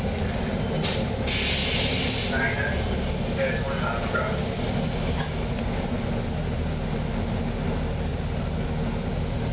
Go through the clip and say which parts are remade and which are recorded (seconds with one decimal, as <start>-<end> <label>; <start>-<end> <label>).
0.0-9.5 recorded